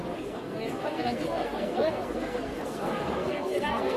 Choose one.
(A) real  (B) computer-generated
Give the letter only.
B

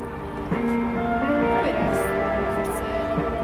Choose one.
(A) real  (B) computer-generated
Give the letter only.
A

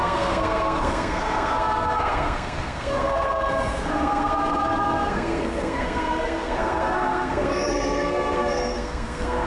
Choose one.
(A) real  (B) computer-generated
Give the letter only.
B